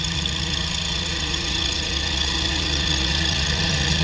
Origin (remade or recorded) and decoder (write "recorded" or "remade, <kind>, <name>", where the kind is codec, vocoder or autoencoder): remade, vocoder, Vocos